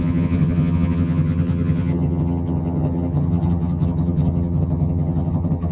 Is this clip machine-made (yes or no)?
yes